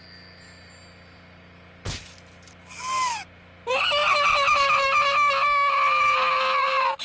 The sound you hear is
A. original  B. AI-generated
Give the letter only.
A